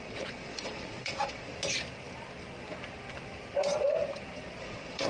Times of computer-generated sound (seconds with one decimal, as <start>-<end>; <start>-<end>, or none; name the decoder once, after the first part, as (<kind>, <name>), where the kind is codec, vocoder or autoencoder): 0.0-1.5 (vocoder, Vocos); 4.6-5.1